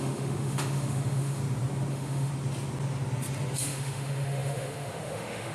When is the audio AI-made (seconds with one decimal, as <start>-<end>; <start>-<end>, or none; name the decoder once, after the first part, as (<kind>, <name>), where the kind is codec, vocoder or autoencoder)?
0.0-1.4 (autoencoder, DAC-VAE); 1.9-2.3; 3.6-5.5